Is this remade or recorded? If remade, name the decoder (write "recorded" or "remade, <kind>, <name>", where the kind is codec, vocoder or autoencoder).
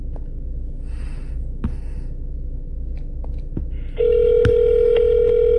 recorded